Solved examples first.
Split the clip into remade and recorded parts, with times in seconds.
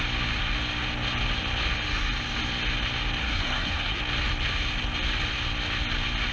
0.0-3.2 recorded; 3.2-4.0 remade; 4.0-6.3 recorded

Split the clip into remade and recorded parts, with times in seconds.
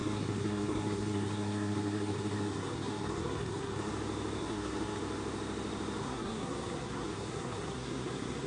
0.0-3.9 remade; 3.9-4.4 recorded; 4.4-5.0 remade; 5.0-6.0 recorded; 6.0-8.5 remade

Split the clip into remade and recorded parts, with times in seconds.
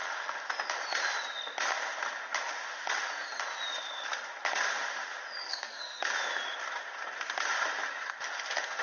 0.0-5.4 recorded; 5.4-6.0 remade; 6.0-8.8 recorded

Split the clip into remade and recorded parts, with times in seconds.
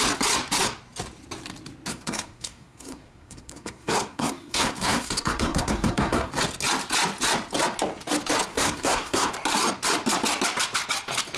0.0-1.9 recorded; 1.9-6.3 remade; 6.3-8.5 recorded; 8.5-9.3 remade; 9.3-11.4 recorded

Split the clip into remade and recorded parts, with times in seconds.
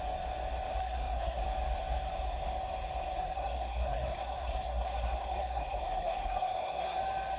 0.0-0.8 recorded; 0.8-1.4 remade; 1.4-3.2 recorded; 3.2-7.0 remade; 7.0-7.4 recorded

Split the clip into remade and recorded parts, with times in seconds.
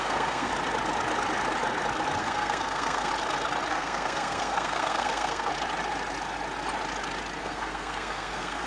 0.0-0.5 remade; 0.5-2.2 recorded; 2.2-3.1 remade; 3.1-3.7 recorded; 3.7-5.5 remade; 5.5-7.4 recorded; 7.4-8.7 remade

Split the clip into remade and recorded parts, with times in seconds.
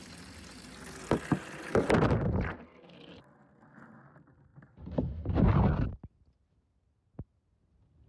0.0-8.1 recorded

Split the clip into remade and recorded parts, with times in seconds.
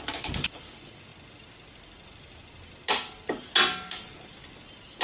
0.0-5.0 recorded